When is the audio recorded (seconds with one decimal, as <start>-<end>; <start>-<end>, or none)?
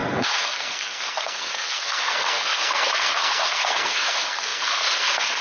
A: none